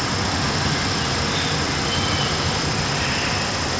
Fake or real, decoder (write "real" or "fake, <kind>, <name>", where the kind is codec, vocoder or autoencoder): real